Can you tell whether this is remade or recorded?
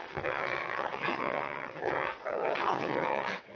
remade